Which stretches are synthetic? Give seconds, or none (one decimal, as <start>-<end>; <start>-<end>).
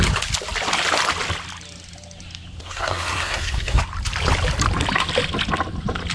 2.6-3.8